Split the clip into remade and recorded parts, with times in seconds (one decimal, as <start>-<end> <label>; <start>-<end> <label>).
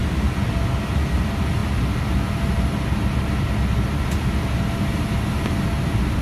0.0-6.2 recorded